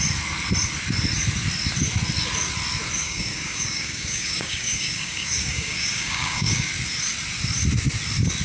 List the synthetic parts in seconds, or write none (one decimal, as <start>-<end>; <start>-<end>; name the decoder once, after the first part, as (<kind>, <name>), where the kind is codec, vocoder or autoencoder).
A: 3.0-6.7 (codec, DAC)